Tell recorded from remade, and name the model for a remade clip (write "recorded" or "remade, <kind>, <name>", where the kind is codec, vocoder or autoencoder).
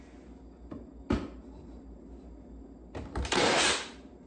recorded